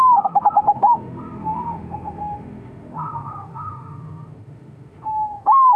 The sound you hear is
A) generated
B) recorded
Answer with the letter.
A